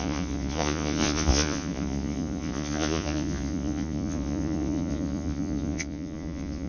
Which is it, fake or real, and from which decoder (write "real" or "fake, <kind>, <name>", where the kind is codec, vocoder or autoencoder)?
fake, vocoder, Vocos